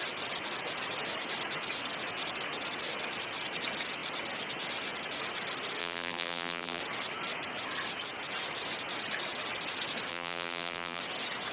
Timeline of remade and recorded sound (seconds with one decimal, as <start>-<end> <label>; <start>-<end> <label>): 0.0-5.8 recorded; 5.8-6.8 remade; 6.8-10.1 recorded; 10.1-11.0 remade; 11.0-11.5 recorded